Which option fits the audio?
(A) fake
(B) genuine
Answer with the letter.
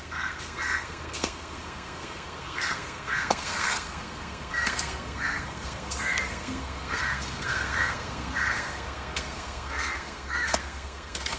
A